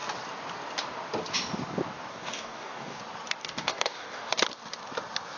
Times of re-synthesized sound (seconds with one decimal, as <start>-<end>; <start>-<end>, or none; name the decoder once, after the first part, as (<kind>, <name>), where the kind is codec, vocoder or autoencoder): 2.1-3.0 (codec, DAC); 3.4-4.3